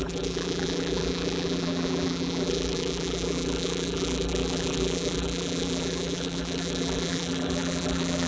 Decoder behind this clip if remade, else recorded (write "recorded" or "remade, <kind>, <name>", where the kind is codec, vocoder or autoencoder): remade, vocoder, BigVGAN v2